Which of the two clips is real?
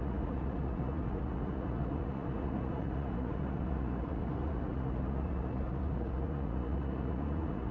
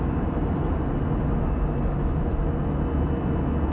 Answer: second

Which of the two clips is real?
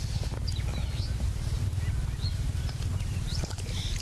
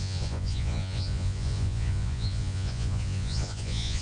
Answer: first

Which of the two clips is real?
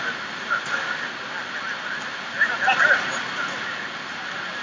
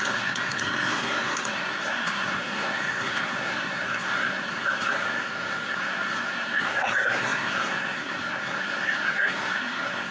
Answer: first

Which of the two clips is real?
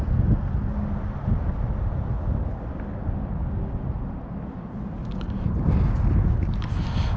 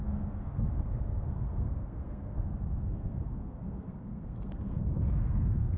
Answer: first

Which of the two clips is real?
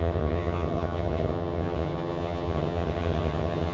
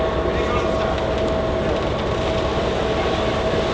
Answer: second